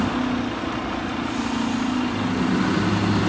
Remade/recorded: recorded